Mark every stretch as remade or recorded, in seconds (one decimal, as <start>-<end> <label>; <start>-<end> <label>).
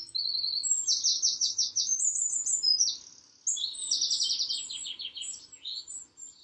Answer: 0.0-1.1 recorded; 1.1-2.3 remade; 2.3-6.4 recorded